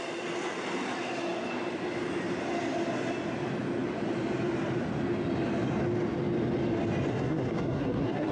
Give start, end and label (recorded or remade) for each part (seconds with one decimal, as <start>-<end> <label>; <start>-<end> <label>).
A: 0.0-7.1 recorded; 7.1-8.3 remade